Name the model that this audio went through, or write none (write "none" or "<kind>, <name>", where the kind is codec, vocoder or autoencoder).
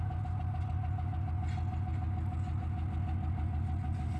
none